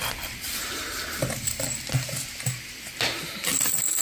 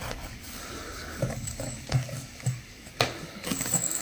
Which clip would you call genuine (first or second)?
first